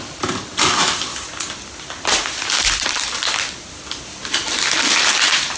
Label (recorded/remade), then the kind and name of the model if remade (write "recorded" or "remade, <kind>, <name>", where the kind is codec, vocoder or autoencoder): recorded